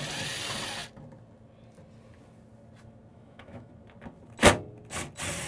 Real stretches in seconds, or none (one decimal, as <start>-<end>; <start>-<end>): 0.0-3.1; 3.7-5.5